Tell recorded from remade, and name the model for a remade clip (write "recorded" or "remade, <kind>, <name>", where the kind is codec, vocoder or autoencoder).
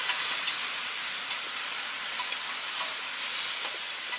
recorded